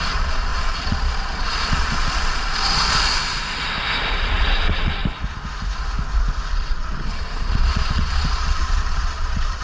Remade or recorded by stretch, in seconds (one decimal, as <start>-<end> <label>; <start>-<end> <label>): 0.0-3.6 remade; 3.6-4.1 recorded; 4.1-5.0 remade; 5.0-6.5 recorded; 6.5-9.6 remade